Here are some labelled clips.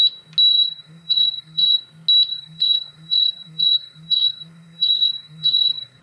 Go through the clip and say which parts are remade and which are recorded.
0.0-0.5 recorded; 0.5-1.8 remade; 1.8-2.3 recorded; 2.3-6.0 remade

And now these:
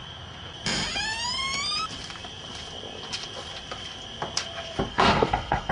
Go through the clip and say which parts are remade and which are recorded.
0.0-4.9 recorded; 4.9-5.7 remade

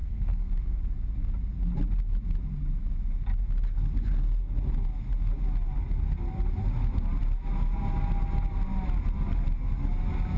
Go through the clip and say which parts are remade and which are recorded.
0.0-0.8 remade; 0.8-10.4 recorded

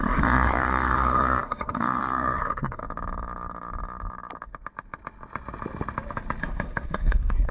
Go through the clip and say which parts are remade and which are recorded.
0.0-2.8 remade; 2.8-6.4 recorded; 6.4-7.5 remade

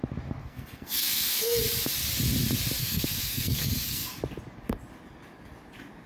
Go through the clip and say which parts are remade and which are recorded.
0.0-0.4 recorded; 0.4-1.6 remade; 1.6-2.8 recorded; 2.8-4.2 remade; 4.2-6.1 recorded